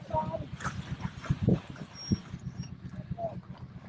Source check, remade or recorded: recorded